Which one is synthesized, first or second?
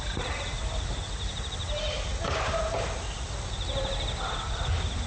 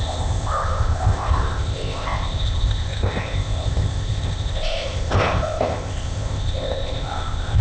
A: second